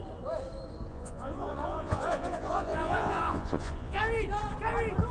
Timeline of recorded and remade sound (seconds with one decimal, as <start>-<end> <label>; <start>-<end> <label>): 0.0-0.9 recorded; 0.9-4.0 remade; 4.0-5.1 recorded